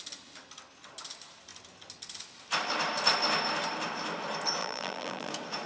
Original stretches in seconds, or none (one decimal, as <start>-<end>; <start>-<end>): 0.0-4.6; 5.3-5.7